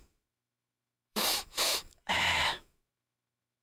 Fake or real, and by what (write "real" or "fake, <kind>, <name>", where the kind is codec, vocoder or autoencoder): fake, autoencoder, DAC-VAE